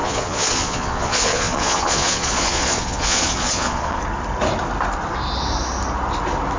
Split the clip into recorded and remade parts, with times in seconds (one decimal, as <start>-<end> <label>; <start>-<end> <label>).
0.0-4.0 remade; 4.0-6.6 recorded

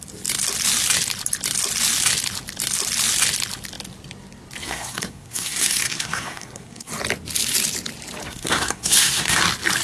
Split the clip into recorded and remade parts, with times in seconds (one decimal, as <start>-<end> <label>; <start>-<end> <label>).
0.0-4.6 recorded; 4.6-6.9 remade; 6.9-8.2 recorded; 8.2-9.4 remade; 9.4-9.8 recorded

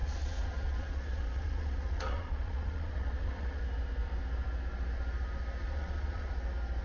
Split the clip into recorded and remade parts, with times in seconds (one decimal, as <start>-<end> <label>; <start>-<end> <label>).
0.0-3.6 remade; 3.6-5.6 recorded; 5.6-6.3 remade; 6.3-6.8 recorded